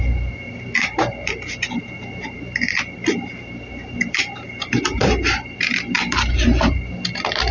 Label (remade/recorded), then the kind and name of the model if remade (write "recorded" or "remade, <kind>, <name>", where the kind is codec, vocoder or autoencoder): remade, vocoder, BigVGAN v2